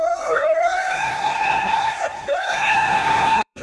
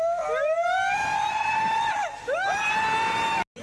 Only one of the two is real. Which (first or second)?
second